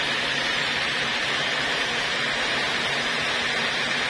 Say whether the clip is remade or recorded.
recorded